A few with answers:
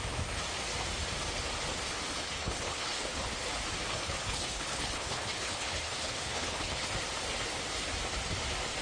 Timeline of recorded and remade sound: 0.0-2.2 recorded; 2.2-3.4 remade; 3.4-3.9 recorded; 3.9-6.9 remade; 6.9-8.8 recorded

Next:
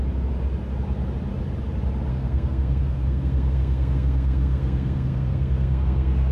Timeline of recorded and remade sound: 0.0-2.1 recorded; 2.1-6.3 remade